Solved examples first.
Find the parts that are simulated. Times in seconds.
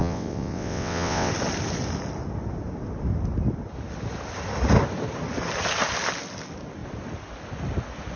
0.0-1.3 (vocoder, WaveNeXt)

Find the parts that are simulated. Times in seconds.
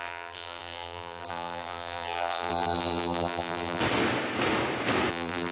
0.0-3.8 (vocoder, BigVGAN v2); 5.1-5.5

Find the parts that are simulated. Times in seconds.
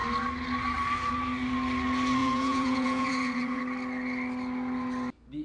2.2-3.6 (vocoder, Vocos)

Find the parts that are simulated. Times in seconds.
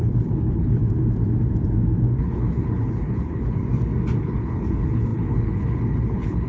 0.0-0.8 (codec, HILCodec); 2.2-3.6; 4.2-6.5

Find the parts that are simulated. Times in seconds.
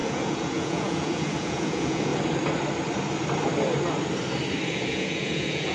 0.0-2.1 (vocoder, Vocos); 4.7-5.7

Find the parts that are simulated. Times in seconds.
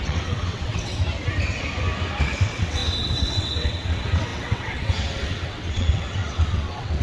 0.0-1.0 (vocoder, WaveNeXt); 2.2-7.0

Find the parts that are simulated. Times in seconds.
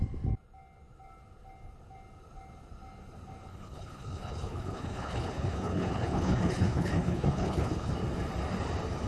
3.5-7.9 (codec, HILCodec)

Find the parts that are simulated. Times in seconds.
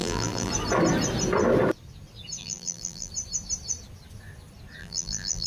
0.0-0.5 (vocoder, BigVGAN v2); 2.4-3.1; 4.8-5.5